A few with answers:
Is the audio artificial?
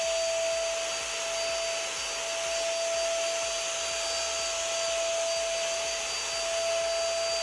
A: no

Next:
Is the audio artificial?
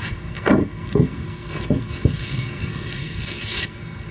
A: yes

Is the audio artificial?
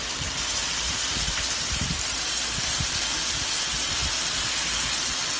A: no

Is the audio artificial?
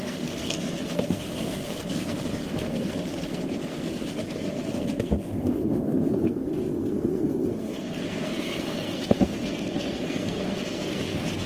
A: yes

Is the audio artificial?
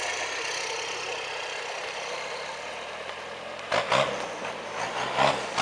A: no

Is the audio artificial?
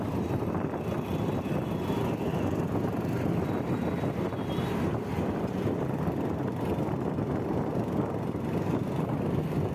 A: no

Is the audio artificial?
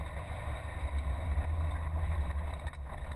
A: no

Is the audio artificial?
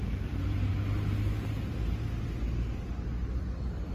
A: no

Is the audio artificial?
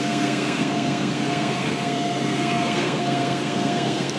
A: yes